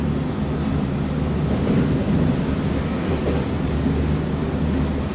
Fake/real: real